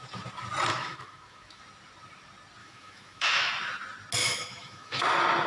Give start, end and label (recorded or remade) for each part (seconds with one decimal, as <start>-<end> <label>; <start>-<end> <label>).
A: 0.0-0.7 recorded; 0.7-1.6 remade; 1.6-2.6 recorded; 2.6-3.5 remade; 3.5-4.2 recorded; 4.2-5.0 remade; 5.0-5.5 recorded

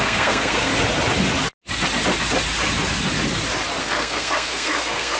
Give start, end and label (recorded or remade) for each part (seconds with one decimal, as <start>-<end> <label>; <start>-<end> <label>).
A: 0.0-0.7 remade; 0.7-3.8 recorded; 3.8-5.2 remade

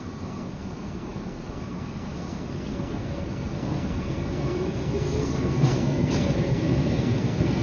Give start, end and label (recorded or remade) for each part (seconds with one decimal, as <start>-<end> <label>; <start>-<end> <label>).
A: 0.0-7.6 remade

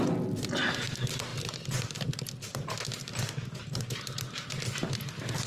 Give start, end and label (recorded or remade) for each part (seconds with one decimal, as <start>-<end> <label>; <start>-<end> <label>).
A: 0.0-5.5 recorded

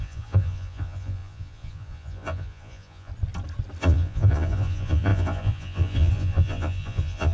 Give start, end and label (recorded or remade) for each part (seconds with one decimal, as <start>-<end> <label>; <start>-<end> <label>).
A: 0.0-3.1 remade; 3.1-3.8 recorded; 3.8-7.3 remade

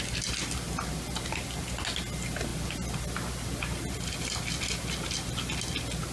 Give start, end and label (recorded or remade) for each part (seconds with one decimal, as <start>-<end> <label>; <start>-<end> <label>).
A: 0.0-6.1 recorded

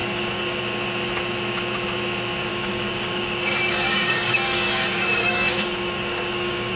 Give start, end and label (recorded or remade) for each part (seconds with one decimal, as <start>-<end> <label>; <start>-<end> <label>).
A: 0.0-0.6 remade; 0.6-2.5 recorded; 2.5-6.8 remade

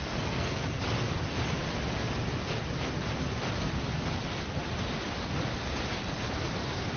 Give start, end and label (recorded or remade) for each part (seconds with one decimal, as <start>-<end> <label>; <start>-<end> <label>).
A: 0.0-0.8 remade; 0.8-7.0 recorded